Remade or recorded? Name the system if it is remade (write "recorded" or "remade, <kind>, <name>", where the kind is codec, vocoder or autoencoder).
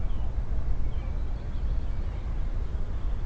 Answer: recorded